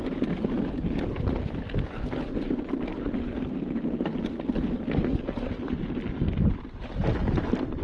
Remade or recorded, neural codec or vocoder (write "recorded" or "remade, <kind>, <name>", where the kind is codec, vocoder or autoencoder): recorded